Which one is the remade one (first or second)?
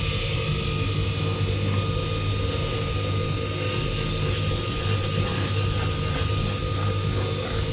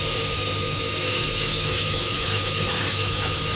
second